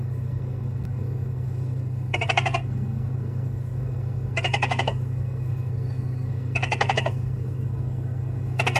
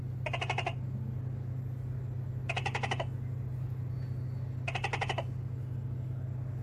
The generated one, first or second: first